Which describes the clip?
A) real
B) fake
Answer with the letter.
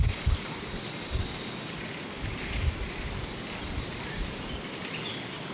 A